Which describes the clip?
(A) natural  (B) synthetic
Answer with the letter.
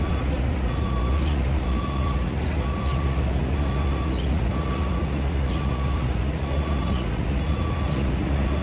B